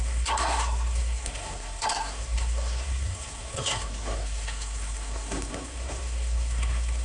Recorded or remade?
remade